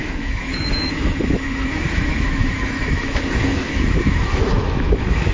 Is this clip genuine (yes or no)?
no